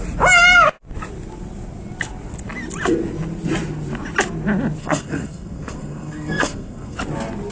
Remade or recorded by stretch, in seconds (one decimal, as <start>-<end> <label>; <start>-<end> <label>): 0.0-4.8 recorded; 4.8-7.0 remade; 7.0-7.5 recorded